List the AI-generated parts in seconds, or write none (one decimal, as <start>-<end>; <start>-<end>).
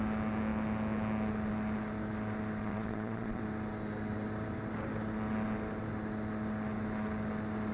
2.6-3.4